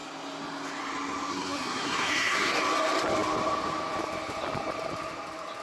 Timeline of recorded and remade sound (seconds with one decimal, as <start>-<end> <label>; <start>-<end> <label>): 0.0-1.3 recorded; 1.3-2.6 remade; 2.6-5.6 recorded